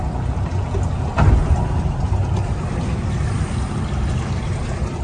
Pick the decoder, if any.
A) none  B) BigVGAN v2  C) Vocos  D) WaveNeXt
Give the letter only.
A